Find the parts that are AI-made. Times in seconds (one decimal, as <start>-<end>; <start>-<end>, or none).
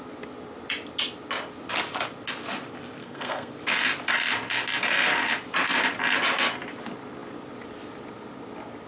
3.0-3.5